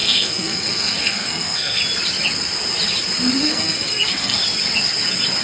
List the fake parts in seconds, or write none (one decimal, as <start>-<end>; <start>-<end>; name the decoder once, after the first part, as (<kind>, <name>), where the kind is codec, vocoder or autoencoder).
0.0-1.8 (codec, SNAC); 3.4-4.4